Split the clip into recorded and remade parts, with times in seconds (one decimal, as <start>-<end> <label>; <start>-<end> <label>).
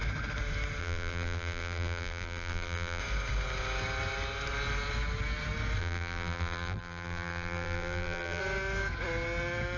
0.0-0.8 recorded; 0.8-3.0 remade; 3.0-5.8 recorded; 5.8-8.4 remade; 8.4-9.8 recorded